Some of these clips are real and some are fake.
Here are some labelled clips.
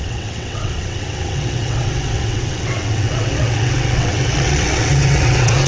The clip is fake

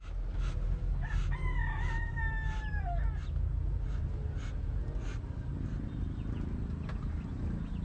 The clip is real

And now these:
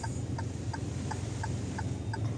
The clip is real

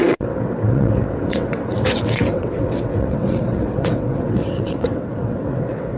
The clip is fake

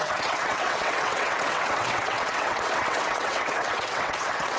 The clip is fake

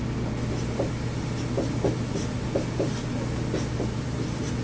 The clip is real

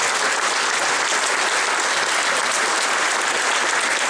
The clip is real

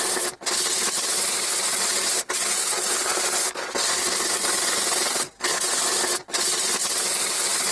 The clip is real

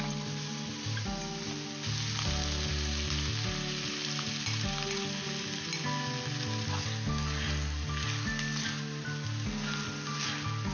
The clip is real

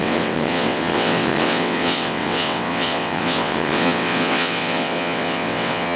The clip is fake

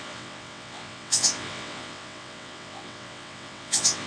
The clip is fake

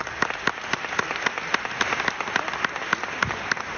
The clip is real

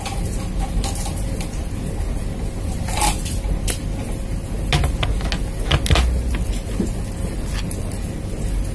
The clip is real